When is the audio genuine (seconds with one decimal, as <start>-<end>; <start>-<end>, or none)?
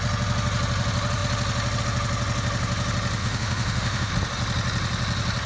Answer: 0.0-3.2; 4.1-5.5